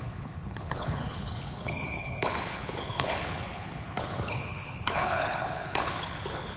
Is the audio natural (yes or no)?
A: no